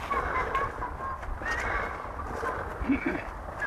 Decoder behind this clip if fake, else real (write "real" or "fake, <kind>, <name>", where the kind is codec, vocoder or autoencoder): real